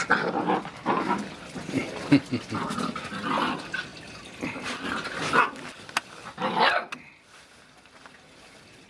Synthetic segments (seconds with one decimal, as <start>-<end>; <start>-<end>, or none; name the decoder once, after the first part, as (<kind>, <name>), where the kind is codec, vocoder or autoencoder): none